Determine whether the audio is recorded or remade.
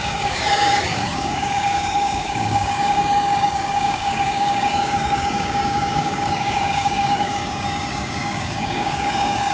remade